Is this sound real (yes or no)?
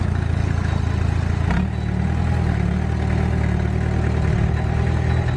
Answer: yes